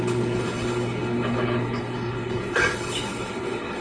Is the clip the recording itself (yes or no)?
no